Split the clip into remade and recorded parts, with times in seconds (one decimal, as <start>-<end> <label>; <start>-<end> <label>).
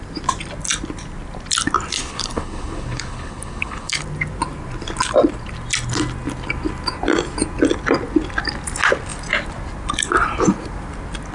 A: 0.0-2.0 recorded; 2.0-4.0 remade; 4.0-11.3 recorded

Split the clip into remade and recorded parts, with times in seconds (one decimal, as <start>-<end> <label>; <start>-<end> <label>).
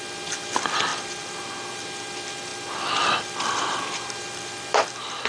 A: 0.0-0.9 recorded; 0.9-1.7 remade; 1.7-2.5 recorded; 2.5-5.3 remade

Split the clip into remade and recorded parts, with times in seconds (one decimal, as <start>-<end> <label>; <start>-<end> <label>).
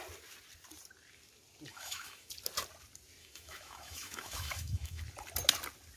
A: 0.0-1.7 recorded; 1.7-2.3 remade; 2.3-3.2 recorded; 3.2-5.0 remade; 5.0-6.0 recorded